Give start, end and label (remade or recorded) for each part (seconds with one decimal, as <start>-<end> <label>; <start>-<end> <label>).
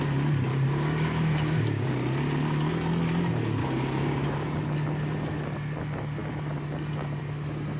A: 0.0-0.5 recorded; 0.5-1.9 remade; 1.9-3.6 recorded; 3.6-4.6 remade; 4.6-7.8 recorded